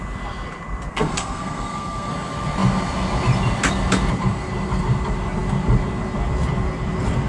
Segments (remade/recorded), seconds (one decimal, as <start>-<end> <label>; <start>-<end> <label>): 0.0-0.9 recorded; 0.9-2.1 remade; 2.1-7.3 recorded